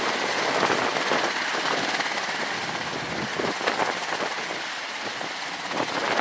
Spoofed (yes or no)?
no